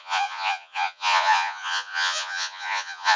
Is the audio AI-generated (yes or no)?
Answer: yes